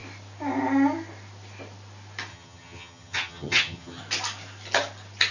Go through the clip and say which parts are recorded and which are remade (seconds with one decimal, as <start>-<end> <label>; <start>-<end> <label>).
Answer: 0.0-2.3 recorded; 2.3-4.0 remade; 4.0-5.3 recorded

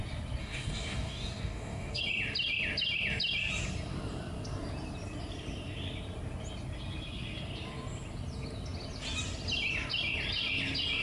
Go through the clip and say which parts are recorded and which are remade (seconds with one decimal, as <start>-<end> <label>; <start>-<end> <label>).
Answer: 0.0-0.4 recorded; 0.4-2.0 remade; 2.0-11.0 recorded